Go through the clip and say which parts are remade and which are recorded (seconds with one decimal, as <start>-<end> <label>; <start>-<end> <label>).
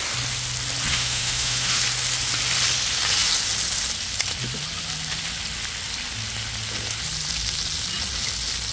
0.0-0.9 recorded; 0.9-1.8 remade; 1.8-8.7 recorded